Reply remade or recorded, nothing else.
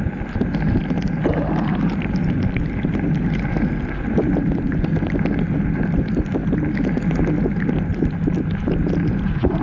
recorded